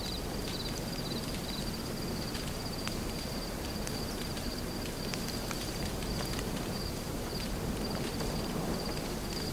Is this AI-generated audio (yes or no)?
yes